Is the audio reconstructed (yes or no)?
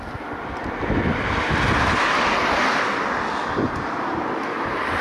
no